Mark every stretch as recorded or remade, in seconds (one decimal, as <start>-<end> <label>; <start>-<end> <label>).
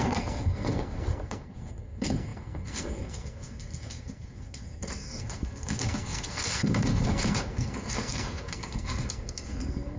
0.0-10.0 remade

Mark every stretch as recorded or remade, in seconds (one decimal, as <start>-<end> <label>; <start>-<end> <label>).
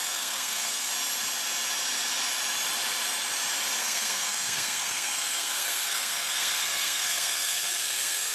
0.0-0.9 remade; 0.9-3.8 recorded; 3.8-8.3 remade